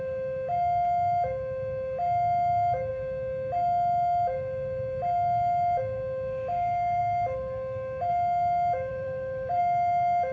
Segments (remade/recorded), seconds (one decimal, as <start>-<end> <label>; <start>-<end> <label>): 0.0-8.9 recorded; 8.9-9.6 remade; 9.6-10.3 recorded